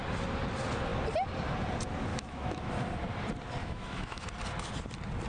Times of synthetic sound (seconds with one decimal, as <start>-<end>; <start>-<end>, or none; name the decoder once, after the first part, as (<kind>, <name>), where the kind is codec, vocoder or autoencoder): 2.1-2.7 (autoencoder, DAC-VAE); 3.6-4.3